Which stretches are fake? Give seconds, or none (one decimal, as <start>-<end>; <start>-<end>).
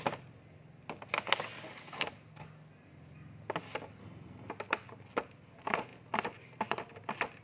4.0-4.5